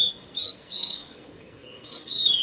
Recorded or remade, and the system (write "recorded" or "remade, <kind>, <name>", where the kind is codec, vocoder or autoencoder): remade, codec, SNAC